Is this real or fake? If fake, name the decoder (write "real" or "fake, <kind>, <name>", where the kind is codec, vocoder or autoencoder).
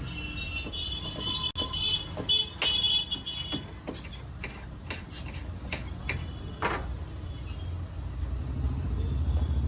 real